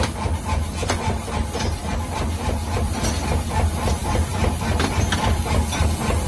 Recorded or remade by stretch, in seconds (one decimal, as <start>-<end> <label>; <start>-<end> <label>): 0.0-6.3 recorded